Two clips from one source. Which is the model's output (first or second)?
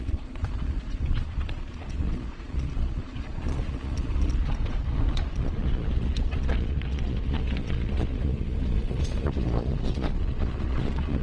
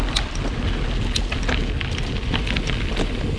first